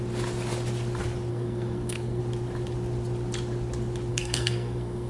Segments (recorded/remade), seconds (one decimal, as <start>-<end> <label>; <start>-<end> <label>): 0.0-1.3 recorded; 1.3-2.2 remade; 2.2-4.1 recorded; 4.1-5.1 remade